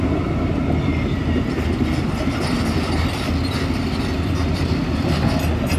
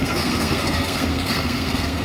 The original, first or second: first